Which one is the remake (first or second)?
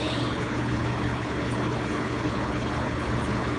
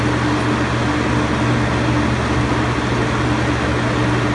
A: first